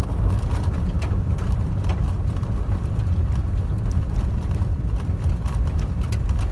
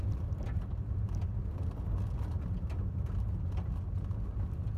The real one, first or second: second